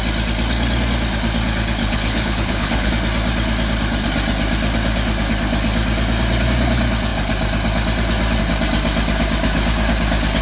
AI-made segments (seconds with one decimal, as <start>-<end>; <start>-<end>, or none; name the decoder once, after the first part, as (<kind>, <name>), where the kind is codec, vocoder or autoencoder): 1.8-2.9 (codec, HILCodec)